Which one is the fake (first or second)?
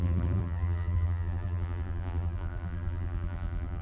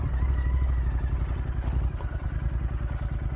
first